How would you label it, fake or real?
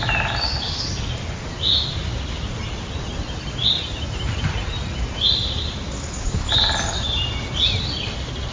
real